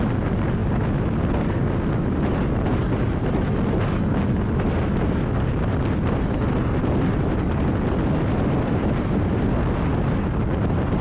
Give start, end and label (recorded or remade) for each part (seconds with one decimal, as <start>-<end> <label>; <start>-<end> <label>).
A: 0.0-11.0 recorded

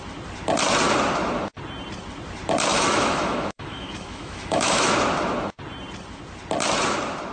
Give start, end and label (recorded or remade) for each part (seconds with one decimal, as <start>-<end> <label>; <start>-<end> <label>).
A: 0.0-2.7 recorded; 2.7-4.9 remade; 4.9-7.3 recorded